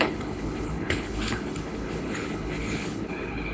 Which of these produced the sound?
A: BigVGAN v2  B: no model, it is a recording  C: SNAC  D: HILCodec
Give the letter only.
D